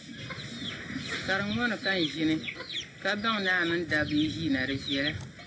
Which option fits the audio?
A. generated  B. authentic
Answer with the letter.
B